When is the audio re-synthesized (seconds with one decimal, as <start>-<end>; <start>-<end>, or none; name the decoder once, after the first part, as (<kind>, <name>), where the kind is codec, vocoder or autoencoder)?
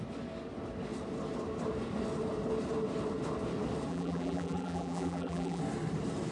3.9-5.6 (vocoder, BigVGAN v2)